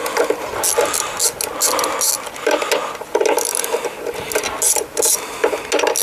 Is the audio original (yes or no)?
yes